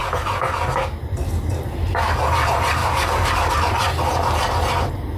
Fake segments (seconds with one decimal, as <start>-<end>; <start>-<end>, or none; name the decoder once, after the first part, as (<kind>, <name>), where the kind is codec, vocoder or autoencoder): 2.8-3.5 (codec, DAC)